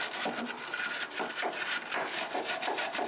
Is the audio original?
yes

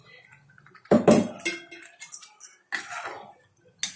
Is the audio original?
yes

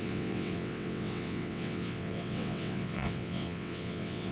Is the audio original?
no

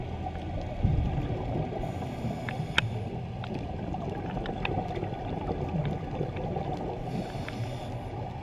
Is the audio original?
yes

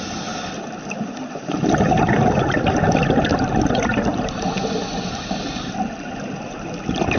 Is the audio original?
no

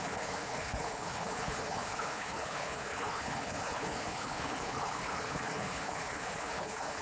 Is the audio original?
no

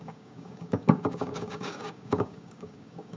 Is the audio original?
no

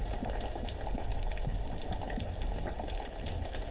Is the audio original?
yes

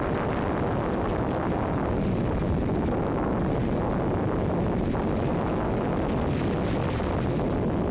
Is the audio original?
yes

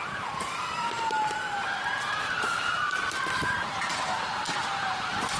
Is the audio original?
no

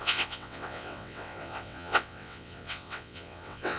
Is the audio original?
no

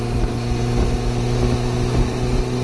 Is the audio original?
yes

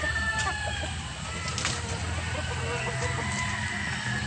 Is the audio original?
yes